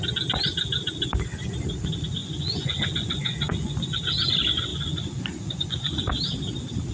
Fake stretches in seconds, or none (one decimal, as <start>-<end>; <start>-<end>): 2.2-3.7; 4.7-6.0

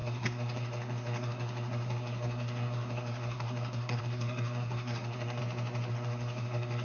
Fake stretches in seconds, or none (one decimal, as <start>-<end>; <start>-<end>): 0.0-5.4; 5.9-6.8

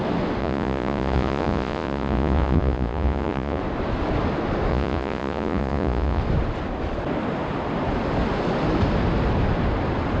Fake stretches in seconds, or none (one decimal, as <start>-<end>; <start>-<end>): 0.4-3.6; 4.7-6.2

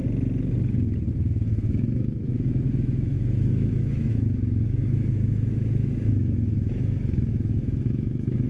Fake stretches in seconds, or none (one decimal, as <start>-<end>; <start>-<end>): 1.1-8.5

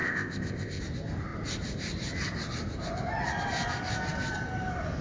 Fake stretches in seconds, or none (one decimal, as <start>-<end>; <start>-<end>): 0.0-0.8

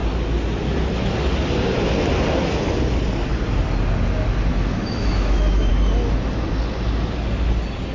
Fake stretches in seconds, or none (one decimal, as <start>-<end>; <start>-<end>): 4.5-5.7

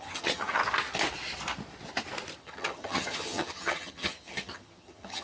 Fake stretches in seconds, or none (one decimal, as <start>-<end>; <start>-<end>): 0.0-0.6; 2.4-5.2

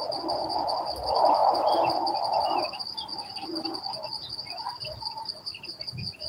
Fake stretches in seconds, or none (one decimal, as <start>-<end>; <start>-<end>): none